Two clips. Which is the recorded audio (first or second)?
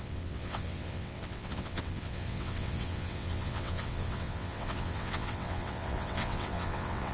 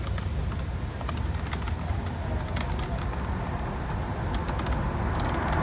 second